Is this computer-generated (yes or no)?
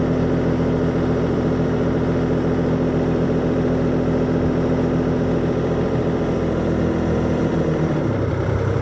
yes